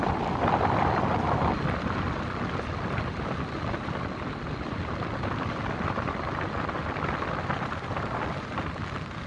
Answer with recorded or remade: recorded